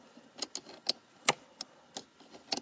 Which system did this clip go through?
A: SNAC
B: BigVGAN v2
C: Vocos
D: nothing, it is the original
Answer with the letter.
D